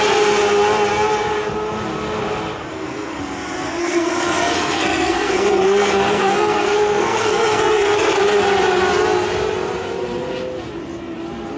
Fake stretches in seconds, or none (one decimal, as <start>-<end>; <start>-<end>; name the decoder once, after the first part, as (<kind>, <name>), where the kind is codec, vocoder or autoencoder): 2.7-3.2 (codec, SNAC); 3.8-8.2